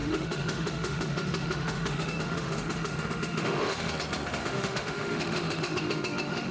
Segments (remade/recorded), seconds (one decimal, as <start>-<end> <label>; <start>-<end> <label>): 0.0-3.9 remade; 3.9-4.4 recorded; 4.4-6.5 remade